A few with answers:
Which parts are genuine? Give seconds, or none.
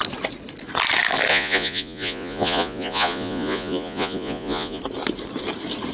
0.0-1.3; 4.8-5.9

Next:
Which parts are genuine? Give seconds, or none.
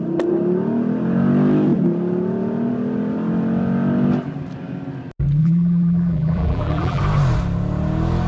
0.0-5.4; 7.0-8.3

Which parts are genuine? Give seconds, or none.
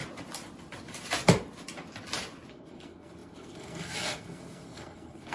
0.0-2.5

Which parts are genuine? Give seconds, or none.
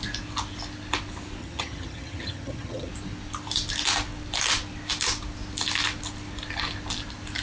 0.0-1.4; 2.9-7.4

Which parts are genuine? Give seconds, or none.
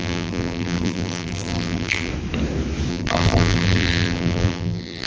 2.1-2.9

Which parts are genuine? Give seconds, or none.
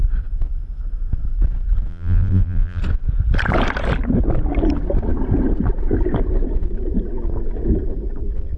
0.0-1.9; 2.8-8.6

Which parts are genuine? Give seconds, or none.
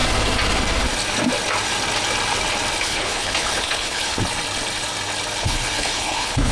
0.0-2.8; 4.2-5.4